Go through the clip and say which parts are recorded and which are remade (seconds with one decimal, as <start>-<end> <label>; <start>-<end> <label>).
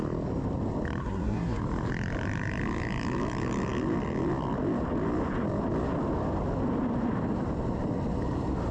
0.0-1.0 recorded; 1.0-1.6 remade; 1.6-8.7 recorded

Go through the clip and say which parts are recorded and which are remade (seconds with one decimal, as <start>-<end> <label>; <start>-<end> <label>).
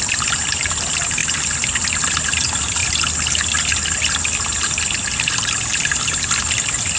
0.0-1.2 remade; 1.2-2.2 recorded; 2.2-2.8 remade; 2.8-5.3 recorded; 5.3-5.7 remade; 5.7-6.4 recorded; 6.4-7.0 remade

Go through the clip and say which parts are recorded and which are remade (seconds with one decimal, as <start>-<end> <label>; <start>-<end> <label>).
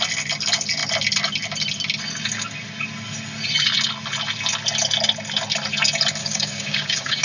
0.0-6.2 recorded; 6.2-7.2 remade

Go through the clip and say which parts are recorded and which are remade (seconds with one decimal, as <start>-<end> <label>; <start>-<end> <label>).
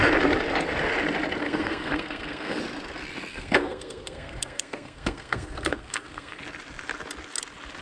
0.0-1.4 recorded; 1.4-2.6 remade; 2.6-3.3 recorded; 3.3-6.4 remade; 6.4-7.8 recorded